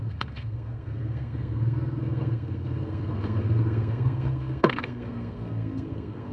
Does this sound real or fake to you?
fake